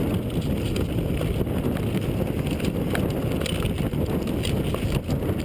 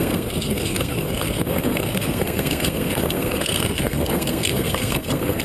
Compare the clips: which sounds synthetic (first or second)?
second